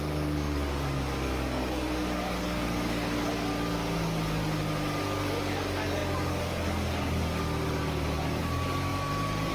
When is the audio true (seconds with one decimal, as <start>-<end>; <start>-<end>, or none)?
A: 4.4-5.0